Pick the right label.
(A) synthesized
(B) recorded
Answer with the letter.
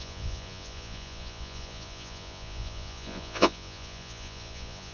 A